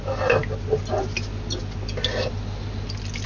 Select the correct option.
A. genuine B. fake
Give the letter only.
A